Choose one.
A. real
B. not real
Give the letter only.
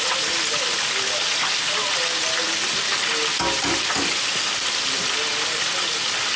A